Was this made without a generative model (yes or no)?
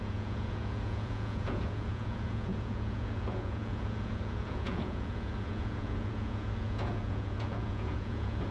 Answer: no